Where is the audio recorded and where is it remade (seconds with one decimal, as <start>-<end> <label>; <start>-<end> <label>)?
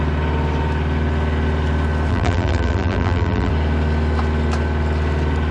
0.0-2.1 recorded; 2.1-3.5 remade; 3.5-5.5 recorded